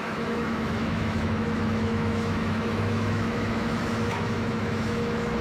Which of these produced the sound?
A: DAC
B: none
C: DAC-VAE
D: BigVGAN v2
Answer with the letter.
C